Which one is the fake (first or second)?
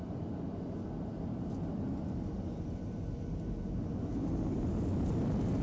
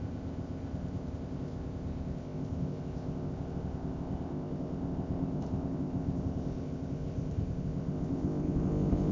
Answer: second